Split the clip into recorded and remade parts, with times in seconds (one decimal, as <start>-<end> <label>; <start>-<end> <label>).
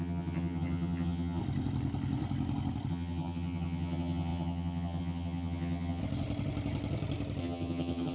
0.0-1.4 remade; 1.4-2.9 recorded; 2.9-6.0 remade; 6.0-7.4 recorded; 7.4-8.1 remade